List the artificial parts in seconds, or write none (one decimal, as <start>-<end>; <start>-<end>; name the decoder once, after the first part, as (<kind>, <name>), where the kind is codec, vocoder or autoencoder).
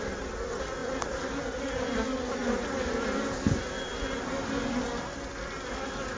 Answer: 0.8-1.4 (vocoder, BigVGAN v2); 2.4-2.9